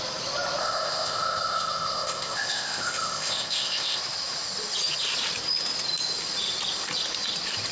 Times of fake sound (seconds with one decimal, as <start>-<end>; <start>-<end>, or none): 0.6-4.0